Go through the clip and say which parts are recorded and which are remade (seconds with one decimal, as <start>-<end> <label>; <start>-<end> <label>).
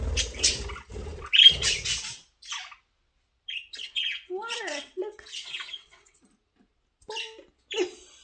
0.0-3.8 recorded; 3.8-6.2 remade; 6.2-8.2 recorded